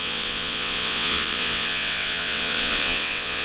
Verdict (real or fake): fake